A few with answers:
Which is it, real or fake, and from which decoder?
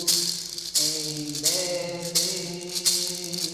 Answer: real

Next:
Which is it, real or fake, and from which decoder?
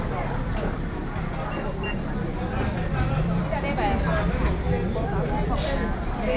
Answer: real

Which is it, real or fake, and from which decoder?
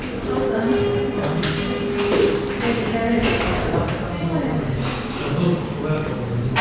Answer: real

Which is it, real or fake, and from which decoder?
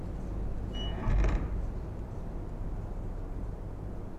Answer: real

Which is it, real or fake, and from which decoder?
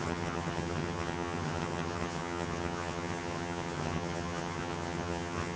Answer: fake, vocoder, HiFi-GAN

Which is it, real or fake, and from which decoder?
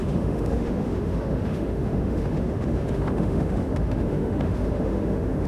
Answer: fake, autoencoder, DAC-VAE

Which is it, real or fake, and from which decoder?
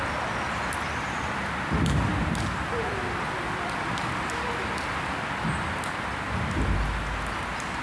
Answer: real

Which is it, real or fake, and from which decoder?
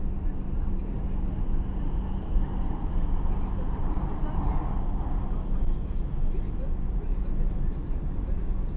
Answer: real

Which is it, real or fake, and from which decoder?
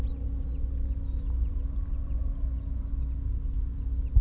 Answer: real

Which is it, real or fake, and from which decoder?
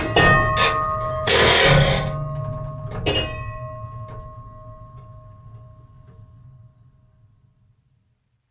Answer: real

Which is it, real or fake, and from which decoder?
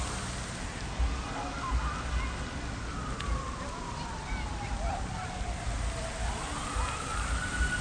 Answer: real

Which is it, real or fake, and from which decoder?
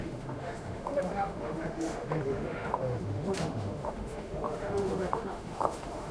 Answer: fake, autoencoder, DAC-VAE